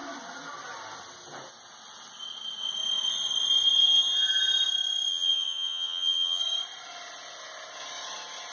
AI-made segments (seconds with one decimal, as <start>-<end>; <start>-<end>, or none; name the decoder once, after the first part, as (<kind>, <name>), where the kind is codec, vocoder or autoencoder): 5.1-6.4 (vocoder, HiFi-GAN)